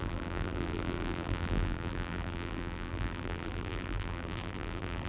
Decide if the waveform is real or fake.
fake